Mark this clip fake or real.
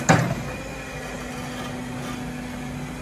real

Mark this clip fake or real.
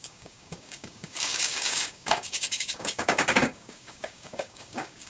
fake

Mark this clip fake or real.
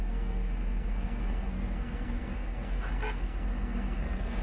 fake